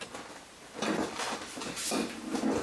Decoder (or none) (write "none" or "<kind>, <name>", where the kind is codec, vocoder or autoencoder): none